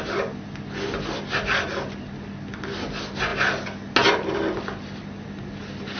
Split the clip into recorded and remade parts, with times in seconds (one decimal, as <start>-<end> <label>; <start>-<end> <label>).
0.0-6.0 recorded